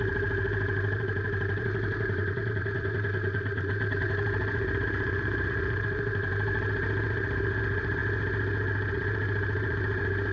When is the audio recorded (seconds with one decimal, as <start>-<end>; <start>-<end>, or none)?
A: 8.0-8.9